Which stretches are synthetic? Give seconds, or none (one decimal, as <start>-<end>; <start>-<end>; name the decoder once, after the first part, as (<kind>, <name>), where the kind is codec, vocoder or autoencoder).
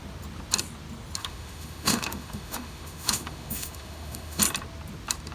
1.2-4.4 (autoencoder, DAC-VAE)